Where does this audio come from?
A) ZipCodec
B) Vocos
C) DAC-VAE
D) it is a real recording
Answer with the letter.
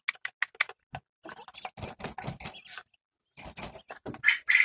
D